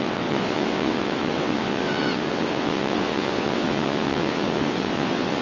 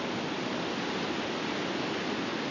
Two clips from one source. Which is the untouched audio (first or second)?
second